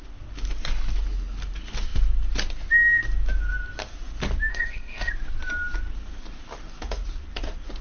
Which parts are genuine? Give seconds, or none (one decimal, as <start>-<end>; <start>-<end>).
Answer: 0.0-4.5; 5.1-7.8